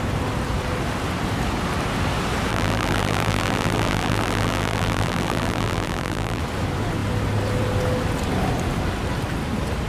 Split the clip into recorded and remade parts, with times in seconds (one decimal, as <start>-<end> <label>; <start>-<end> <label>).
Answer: 0.0-2.5 recorded; 2.5-6.4 remade; 6.4-9.9 recorded